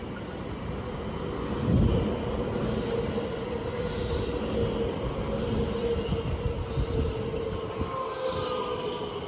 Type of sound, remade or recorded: recorded